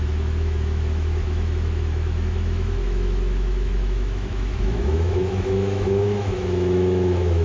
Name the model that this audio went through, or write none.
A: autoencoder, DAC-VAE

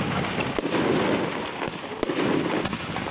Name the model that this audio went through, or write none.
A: none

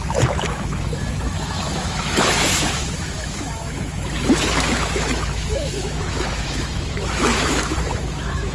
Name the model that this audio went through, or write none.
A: autoencoder, DAC-VAE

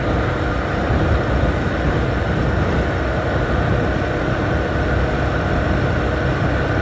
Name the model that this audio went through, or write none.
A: none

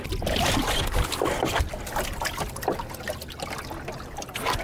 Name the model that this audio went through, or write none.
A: none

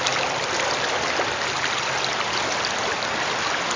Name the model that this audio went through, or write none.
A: none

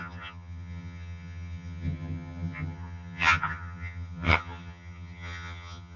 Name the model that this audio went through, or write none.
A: vocoder, HiFi-GAN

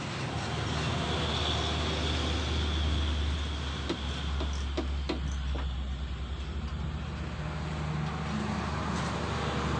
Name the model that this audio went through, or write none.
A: none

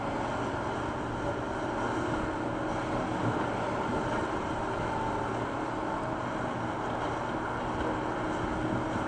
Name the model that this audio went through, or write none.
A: none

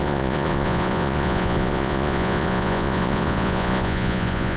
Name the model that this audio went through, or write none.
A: vocoder, Vocos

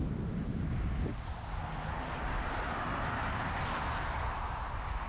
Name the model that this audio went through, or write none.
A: none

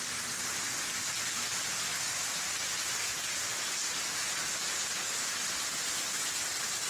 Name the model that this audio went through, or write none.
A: none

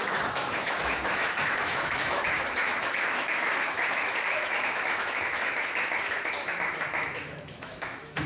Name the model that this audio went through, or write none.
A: autoencoder, DAC-VAE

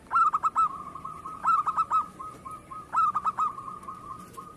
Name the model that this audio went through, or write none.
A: none